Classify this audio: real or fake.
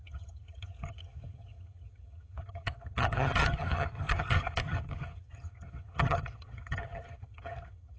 fake